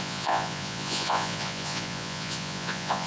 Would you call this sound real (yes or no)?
no